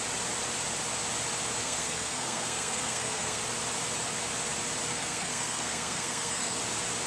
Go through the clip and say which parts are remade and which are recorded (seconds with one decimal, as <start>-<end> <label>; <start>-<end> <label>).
0.0-1.6 recorded; 1.6-3.4 remade; 3.4-4.9 recorded; 4.9-6.6 remade; 6.6-7.1 recorded